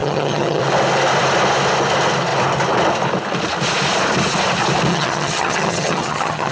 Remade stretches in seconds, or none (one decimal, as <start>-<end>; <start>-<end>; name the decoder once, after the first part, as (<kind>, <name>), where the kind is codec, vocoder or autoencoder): 0.0-0.6 (vocoder, HiFi-GAN); 4.9-6.5